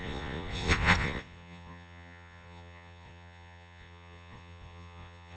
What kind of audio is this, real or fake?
fake